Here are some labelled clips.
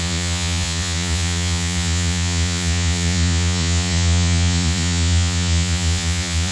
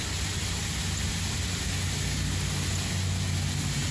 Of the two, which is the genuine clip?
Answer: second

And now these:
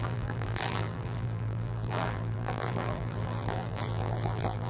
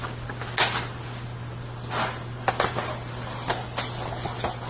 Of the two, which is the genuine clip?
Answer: second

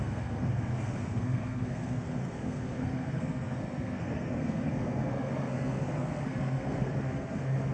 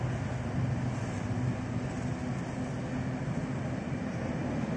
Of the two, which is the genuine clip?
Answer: second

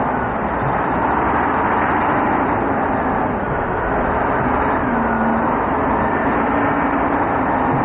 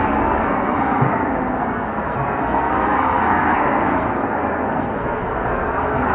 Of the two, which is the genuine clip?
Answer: first